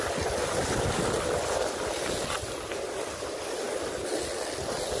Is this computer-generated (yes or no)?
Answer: no